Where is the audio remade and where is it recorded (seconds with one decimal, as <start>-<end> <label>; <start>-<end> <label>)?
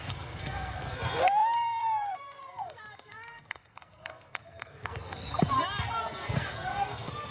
0.0-7.3 remade